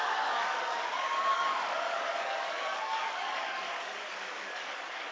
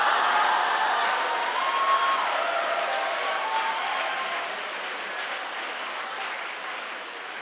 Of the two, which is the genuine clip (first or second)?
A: second